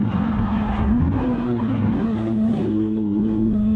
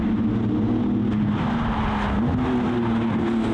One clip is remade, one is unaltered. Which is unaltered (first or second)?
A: second